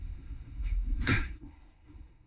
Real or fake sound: fake